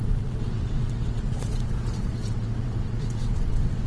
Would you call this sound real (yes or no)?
no